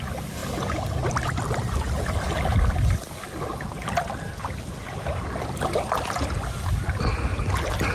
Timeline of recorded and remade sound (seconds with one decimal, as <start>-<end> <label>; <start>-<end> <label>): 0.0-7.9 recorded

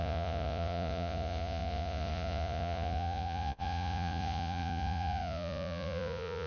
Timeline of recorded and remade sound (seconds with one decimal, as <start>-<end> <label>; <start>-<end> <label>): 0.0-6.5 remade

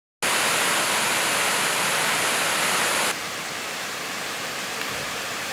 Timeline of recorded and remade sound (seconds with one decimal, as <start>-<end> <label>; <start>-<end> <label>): 0.0-2.8 recorded; 2.8-5.5 remade

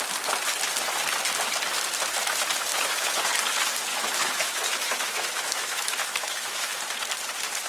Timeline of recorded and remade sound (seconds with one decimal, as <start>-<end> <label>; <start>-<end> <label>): 0.0-2.7 recorded; 2.7-3.3 remade; 3.3-3.9 recorded; 3.9-6.8 remade; 6.8-7.7 recorded

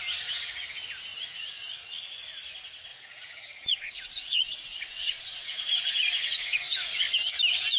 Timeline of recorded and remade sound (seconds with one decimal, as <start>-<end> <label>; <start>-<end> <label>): 0.0-1.1 recorded; 1.1-2.2 remade; 2.2-2.9 recorded; 2.9-7.0 remade; 7.0-7.8 recorded